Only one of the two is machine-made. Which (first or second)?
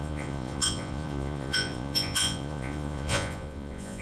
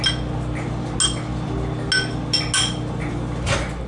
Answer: first